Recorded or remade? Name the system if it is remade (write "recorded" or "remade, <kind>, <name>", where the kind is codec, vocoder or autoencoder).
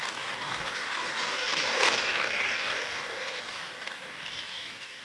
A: remade, codec, DAC